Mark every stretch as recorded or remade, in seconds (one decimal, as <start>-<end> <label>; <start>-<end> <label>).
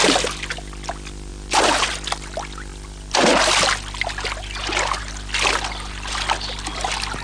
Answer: 0.0-7.2 recorded